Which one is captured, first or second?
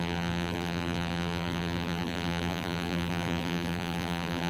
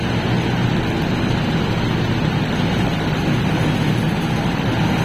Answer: second